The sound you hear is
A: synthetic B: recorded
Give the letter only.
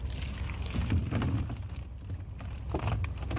B